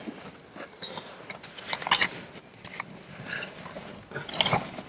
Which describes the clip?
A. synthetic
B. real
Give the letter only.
B